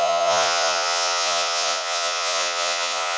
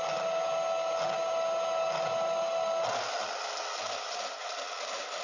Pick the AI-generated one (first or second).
first